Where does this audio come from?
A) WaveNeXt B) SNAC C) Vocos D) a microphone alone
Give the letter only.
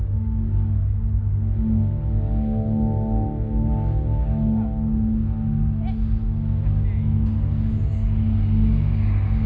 D